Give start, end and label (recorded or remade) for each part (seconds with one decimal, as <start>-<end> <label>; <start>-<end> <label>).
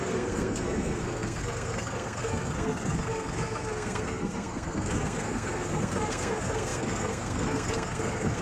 0.0-8.4 remade